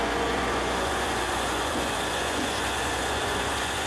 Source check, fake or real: fake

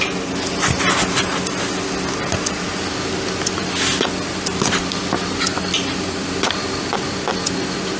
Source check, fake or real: real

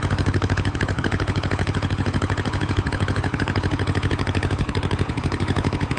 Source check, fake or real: fake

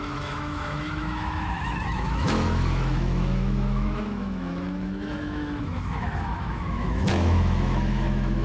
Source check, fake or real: fake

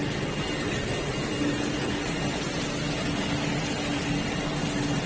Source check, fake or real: real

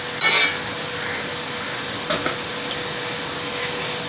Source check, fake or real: real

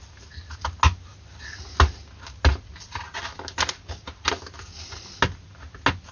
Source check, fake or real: real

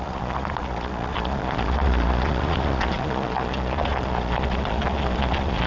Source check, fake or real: fake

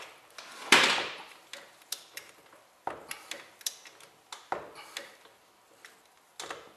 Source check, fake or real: real